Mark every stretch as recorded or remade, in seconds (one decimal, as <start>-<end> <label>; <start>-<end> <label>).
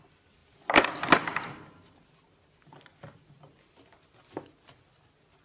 0.0-5.4 recorded